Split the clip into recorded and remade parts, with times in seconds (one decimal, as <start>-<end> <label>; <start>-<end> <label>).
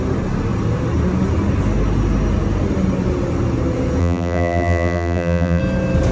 0.0-4.0 recorded; 4.0-5.6 remade; 5.6-6.1 recorded